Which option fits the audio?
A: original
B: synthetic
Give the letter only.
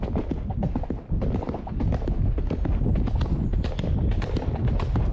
A